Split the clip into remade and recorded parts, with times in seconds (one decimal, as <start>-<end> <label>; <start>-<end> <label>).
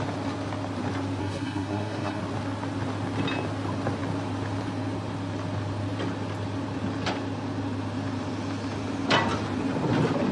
0.0-1.2 recorded; 1.2-2.2 remade; 2.2-10.3 recorded